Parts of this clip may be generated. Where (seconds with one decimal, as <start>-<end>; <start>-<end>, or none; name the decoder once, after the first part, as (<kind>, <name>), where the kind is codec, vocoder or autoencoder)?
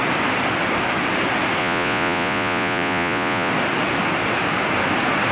1.6-3.5 (vocoder, Vocos)